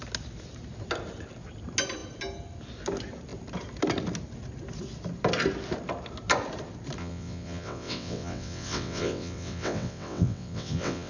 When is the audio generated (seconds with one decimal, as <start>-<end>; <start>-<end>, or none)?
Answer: 7.0-11.1

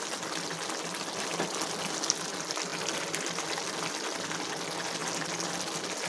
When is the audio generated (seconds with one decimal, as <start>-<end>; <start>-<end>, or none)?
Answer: 2.7-3.8; 5.0-5.6

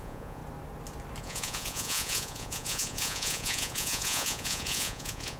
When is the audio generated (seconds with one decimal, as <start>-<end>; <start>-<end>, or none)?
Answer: 0.0-0.4; 1.2-5.4

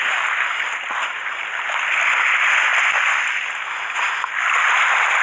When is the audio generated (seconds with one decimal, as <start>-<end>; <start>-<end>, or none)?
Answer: none

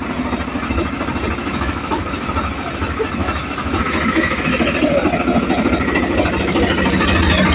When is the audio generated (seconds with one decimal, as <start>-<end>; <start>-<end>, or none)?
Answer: 1.4-2.0; 3.2-4.4

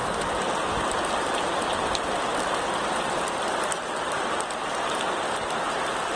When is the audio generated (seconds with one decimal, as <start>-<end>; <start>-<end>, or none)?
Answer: none

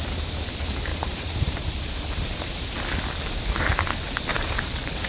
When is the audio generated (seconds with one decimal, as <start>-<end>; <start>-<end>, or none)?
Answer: 0.9-2.8; 4.3-5.1

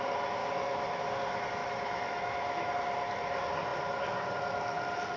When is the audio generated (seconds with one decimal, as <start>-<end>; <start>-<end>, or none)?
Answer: 0.4-1.1; 1.6-2.7